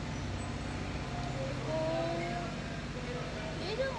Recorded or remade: recorded